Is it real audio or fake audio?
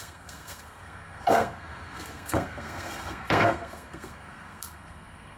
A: fake